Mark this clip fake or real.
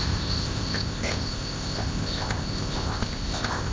fake